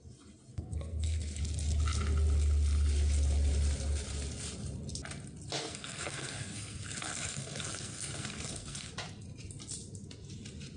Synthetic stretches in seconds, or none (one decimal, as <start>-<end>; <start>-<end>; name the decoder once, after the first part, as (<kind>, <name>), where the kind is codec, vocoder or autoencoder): 0.5-1.4 (codec, SNAC); 5.6-8.9